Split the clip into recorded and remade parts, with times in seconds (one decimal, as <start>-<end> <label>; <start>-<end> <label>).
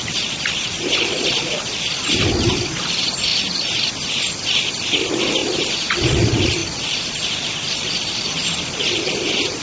0.0-9.6 recorded